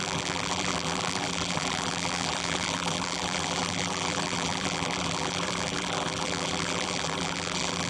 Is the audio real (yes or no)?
no